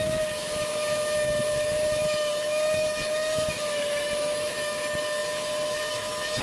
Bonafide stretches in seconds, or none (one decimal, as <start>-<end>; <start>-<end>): none